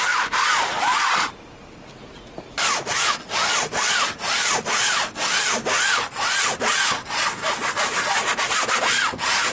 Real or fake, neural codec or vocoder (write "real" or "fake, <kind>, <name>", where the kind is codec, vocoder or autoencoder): real